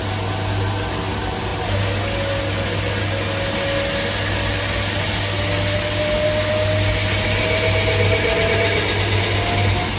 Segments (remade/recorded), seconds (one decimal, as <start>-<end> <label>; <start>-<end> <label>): 0.0-10.0 recorded